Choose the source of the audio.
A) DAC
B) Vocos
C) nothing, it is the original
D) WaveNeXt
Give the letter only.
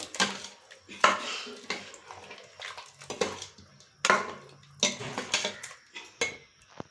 C